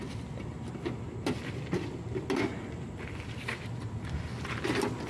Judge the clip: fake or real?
real